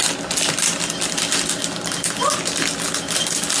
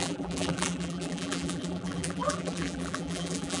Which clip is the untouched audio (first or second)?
first